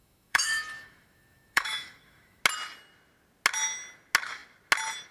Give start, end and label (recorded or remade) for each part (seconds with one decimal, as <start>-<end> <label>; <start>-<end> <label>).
0.0-2.4 remade; 2.4-5.1 recorded